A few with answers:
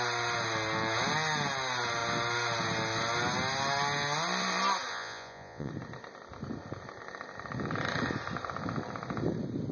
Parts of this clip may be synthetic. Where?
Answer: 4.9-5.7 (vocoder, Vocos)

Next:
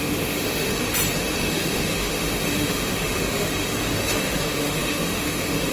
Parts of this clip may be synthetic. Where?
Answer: 0.0-0.7 (autoencoder, DAC-VAE); 1.5-5.7